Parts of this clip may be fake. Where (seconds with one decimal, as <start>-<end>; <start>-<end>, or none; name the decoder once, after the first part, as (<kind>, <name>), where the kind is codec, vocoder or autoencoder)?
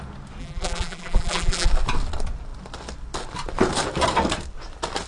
0.4-1.7 (vocoder, BigVGAN v2)